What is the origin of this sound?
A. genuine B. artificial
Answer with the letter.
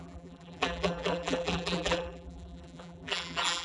B